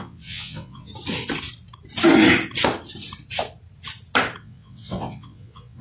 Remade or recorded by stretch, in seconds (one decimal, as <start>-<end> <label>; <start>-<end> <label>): 0.0-0.9 remade; 0.9-4.4 recorded; 4.4-5.8 remade